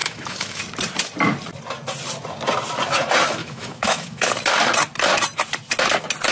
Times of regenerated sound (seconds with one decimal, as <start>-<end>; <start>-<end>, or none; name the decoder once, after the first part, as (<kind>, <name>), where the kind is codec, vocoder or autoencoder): 0.0-0.6 (autoencoder, DAC-VAE); 3.4-4.3